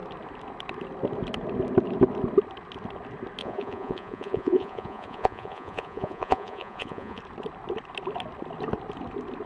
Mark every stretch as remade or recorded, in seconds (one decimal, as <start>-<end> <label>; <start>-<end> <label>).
0.0-3.4 recorded; 3.4-7.2 remade; 7.2-9.5 recorded